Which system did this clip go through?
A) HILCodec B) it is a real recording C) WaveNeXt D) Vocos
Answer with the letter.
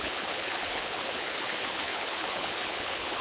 A